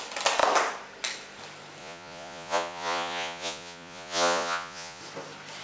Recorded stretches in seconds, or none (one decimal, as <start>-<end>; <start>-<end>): 0.0-1.8; 5.0-5.6